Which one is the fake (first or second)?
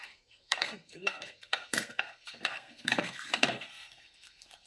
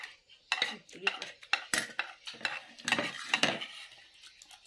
first